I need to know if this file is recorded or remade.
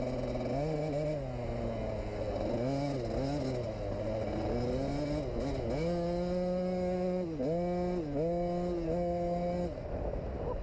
recorded